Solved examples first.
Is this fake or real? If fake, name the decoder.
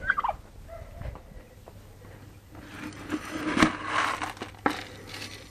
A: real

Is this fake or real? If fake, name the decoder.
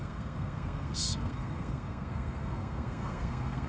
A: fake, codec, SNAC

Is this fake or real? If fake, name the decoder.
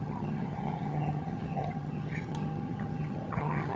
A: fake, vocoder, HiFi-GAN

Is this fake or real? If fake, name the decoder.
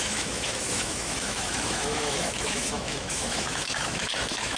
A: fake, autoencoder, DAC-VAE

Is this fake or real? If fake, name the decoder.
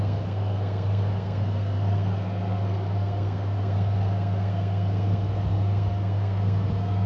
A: fake, codec, SNAC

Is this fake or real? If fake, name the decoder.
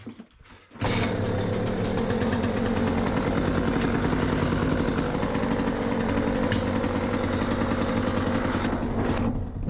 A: real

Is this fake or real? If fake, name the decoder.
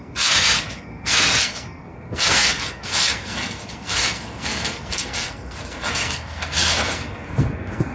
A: fake, codec, SNAC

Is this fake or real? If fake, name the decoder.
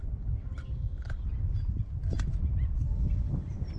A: real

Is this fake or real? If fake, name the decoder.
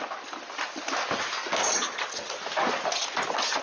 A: real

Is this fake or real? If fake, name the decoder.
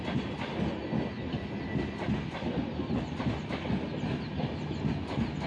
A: real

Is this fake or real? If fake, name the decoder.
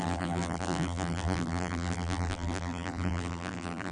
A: fake, vocoder, BigVGAN v2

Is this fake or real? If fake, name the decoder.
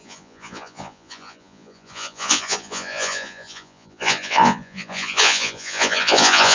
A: fake, vocoder, Vocos